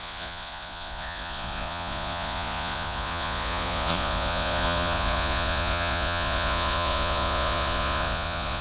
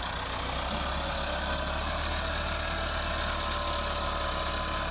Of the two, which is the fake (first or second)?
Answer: first